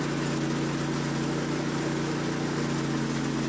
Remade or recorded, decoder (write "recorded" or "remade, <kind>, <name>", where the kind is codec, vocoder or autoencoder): recorded